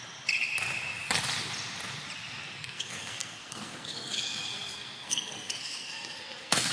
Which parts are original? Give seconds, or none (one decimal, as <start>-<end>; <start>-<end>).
0.0-2.4